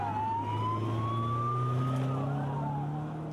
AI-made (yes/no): no